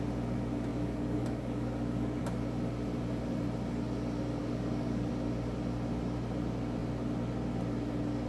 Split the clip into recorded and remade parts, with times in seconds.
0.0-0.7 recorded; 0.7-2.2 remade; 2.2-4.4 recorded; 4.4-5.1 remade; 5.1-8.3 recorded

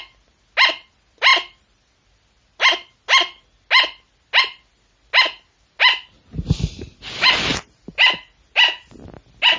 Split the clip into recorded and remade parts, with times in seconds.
0.0-9.6 recorded

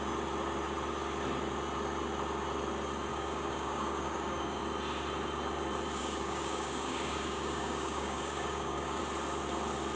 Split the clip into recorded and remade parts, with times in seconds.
0.0-3.1 recorded; 3.1-4.6 remade; 4.6-6.0 recorded; 6.0-9.0 remade; 9.0-10.0 recorded

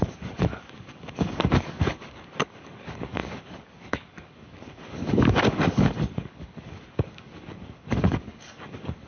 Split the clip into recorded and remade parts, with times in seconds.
0.0-9.1 remade

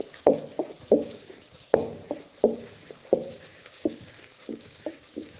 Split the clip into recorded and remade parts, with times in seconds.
0.0-0.4 remade; 0.4-0.9 recorded; 0.9-2.0 remade; 2.0-2.6 recorded; 2.6-5.4 remade

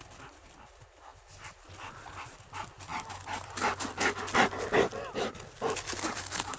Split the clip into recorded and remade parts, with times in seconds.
0.0-6.6 recorded